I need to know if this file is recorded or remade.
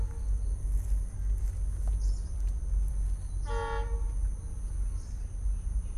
recorded